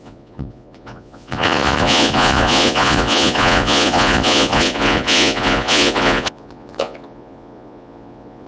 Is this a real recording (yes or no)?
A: no